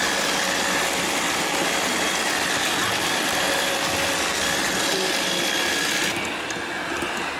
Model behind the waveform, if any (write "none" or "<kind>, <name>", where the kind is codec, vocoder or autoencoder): none